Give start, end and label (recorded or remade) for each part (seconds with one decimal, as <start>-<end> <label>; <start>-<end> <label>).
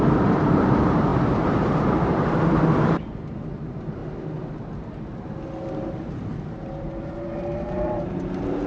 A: 0.0-4.0 remade; 4.0-6.8 recorded; 6.8-8.7 remade